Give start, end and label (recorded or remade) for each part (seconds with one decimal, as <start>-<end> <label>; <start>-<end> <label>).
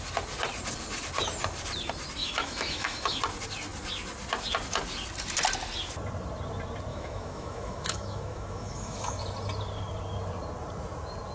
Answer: 0.0-2.2 recorded; 2.2-3.2 remade; 3.2-6.9 recorded; 6.9-9.2 remade; 9.2-11.3 recorded